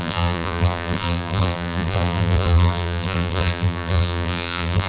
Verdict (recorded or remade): remade